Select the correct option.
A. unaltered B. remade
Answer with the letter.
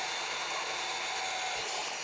A